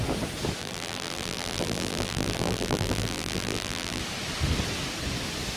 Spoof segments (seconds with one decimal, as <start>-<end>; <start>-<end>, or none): 0.6-4.0